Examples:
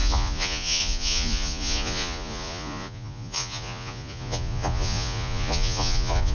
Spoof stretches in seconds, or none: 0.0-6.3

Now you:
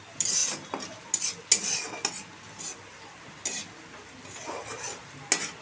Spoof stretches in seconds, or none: none